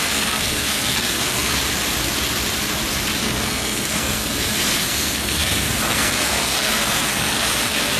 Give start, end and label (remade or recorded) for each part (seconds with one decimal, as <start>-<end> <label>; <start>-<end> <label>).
0.0-1.6 remade; 1.6-3.2 recorded; 3.2-8.0 remade